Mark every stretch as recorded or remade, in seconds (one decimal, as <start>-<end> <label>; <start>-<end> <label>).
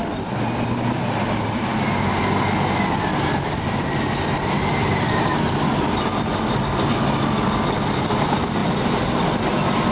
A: 0.0-9.9 recorded